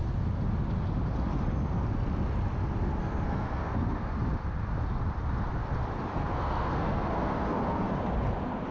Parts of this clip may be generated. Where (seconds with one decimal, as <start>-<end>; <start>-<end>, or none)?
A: 3.0-4.1; 6.1-8.0